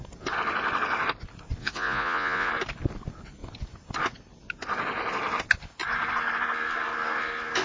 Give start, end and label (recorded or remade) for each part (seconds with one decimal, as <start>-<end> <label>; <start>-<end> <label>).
0.0-1.6 recorded; 1.6-2.5 remade; 2.5-7.6 recorded